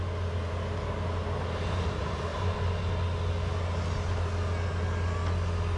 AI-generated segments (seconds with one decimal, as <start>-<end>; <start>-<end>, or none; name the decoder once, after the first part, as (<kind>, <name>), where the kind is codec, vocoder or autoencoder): none